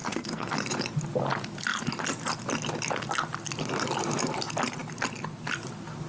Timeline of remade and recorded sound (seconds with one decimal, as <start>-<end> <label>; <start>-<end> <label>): 0.0-0.5 remade; 0.5-6.1 recorded